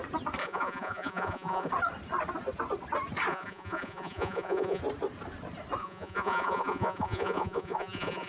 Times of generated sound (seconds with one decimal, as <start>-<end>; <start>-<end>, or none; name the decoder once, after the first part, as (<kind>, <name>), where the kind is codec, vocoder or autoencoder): 0.4-1.7 (vocoder, Vocos); 3.3-4.8; 5.8-8.3